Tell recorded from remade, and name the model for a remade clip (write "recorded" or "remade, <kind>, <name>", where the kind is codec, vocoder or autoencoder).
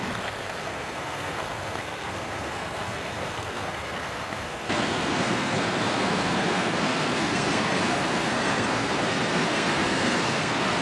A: remade, codec, SNAC